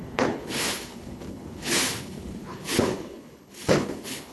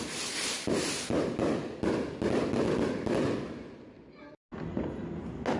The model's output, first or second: first